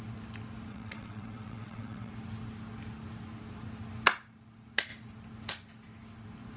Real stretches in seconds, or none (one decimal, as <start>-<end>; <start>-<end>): 0.0-0.7; 2.1-6.6